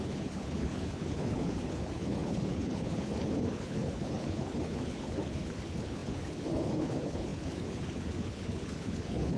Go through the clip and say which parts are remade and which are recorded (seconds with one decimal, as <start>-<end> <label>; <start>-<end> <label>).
0.0-9.4 remade